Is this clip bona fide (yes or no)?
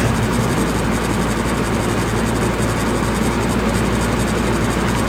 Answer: yes